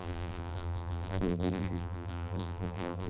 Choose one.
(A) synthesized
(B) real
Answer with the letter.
A